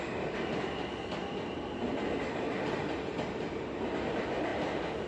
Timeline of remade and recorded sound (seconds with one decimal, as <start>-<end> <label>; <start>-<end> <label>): 0.0-5.1 recorded